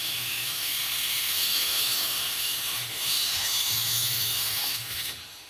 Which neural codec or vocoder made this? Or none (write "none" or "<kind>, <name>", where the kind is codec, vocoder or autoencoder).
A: autoencoder, DAC-VAE